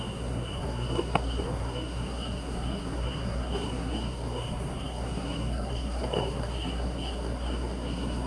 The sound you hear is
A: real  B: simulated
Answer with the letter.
B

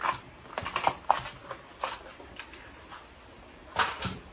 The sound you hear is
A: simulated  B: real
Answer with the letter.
B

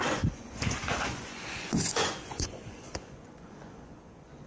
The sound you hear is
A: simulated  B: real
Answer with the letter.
A